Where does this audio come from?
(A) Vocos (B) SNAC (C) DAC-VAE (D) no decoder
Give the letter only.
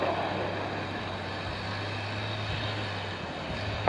D